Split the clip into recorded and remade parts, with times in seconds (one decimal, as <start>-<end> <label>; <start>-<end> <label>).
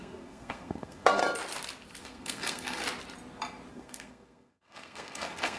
0.0-1.2 remade; 1.2-2.0 recorded; 2.0-2.8 remade; 2.8-3.7 recorded; 3.7-5.6 remade